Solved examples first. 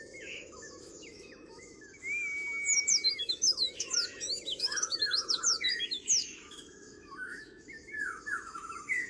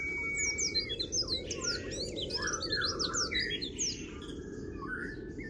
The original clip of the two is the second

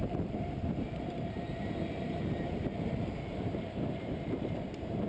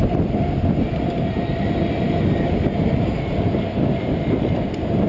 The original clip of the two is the second